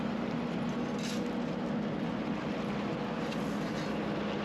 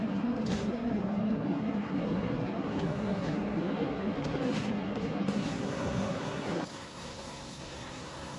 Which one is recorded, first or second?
first